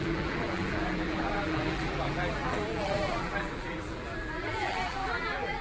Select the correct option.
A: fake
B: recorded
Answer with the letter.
A